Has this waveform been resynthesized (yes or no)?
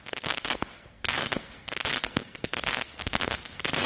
yes